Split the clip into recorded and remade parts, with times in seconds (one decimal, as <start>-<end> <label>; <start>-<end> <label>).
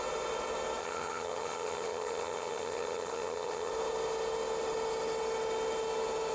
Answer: 0.0-0.8 recorded; 0.8-3.7 remade; 3.7-6.3 recorded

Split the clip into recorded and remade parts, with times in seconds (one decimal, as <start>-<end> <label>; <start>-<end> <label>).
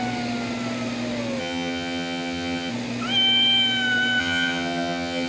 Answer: 0.0-1.4 recorded; 1.4-2.7 remade; 2.7-4.2 recorded; 4.2-5.3 remade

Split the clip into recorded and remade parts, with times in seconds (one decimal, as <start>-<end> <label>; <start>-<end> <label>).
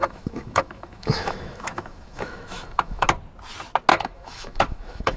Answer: 0.0-3.1 remade; 3.1-3.9 recorded; 3.9-5.2 remade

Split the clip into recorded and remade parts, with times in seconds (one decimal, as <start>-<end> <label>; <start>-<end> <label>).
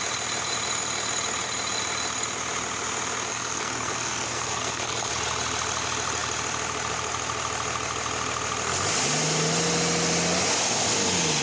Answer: 0.0-3.3 recorded; 3.3-5.1 remade; 5.1-11.4 recorded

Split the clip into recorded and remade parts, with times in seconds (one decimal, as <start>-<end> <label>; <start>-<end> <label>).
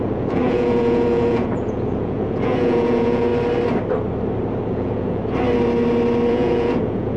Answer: 0.0-3.3 remade; 3.3-4.7 recorded; 4.7-5.2 remade; 5.2-6.3 recorded; 6.3-7.2 remade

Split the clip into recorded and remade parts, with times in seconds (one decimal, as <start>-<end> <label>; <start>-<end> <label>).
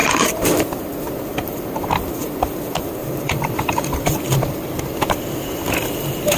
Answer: 0.0-0.5 remade; 0.5-1.3 recorded; 1.3-1.9 remade; 1.9-3.0 recorded; 3.0-4.1 remade; 4.1-6.4 recorded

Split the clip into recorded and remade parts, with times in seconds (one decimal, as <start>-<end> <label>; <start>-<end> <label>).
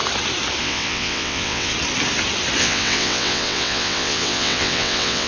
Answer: 0.0-0.6 recorded; 0.6-1.7 remade; 1.7-2.6 recorded; 2.6-5.3 remade